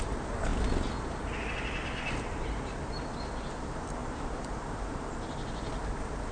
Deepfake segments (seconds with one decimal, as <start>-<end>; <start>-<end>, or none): 4.0-5.2